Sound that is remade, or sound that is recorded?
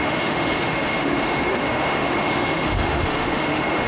remade